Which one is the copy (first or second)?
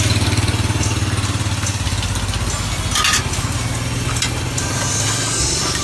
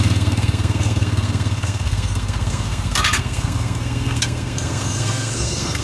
second